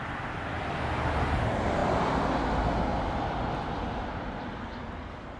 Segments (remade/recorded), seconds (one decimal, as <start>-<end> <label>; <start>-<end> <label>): 0.0-5.4 recorded